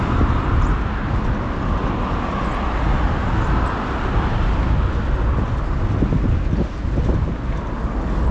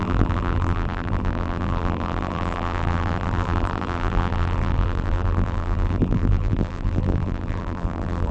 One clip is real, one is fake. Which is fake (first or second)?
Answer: second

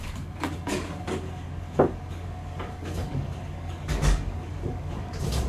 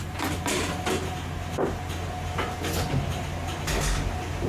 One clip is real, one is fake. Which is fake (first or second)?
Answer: first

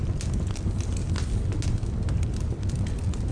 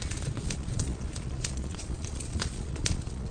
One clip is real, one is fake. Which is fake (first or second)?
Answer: second